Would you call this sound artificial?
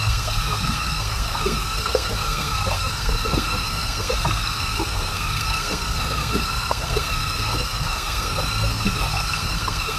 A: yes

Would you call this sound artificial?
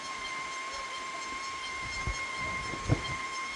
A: no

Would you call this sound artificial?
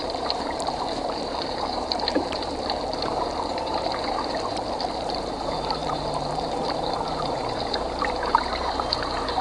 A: yes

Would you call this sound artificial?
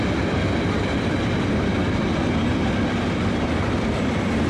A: no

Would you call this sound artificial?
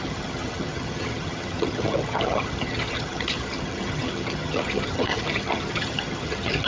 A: yes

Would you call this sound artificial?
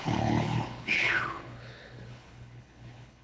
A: yes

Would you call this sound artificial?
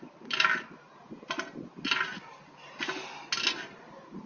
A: no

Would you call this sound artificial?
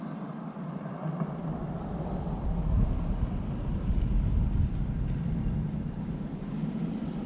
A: yes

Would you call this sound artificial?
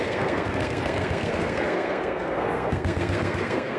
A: yes